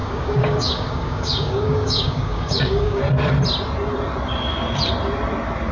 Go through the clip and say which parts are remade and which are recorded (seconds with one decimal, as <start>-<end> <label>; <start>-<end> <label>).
0.0-3.0 remade; 3.0-5.7 recorded